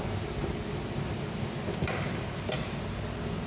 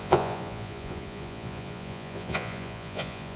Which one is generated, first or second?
second